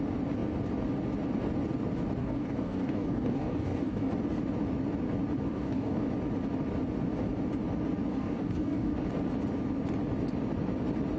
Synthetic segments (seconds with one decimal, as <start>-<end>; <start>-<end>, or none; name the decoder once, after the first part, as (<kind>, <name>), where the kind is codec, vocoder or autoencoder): 2.2-4.1 (codec, DAC); 5.5-6.1; 8.1-9.1